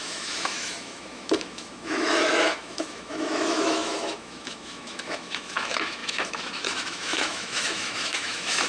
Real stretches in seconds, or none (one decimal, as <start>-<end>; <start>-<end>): none